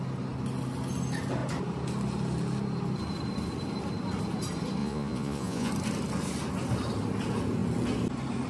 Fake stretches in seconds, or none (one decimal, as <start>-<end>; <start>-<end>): 4.8-5.7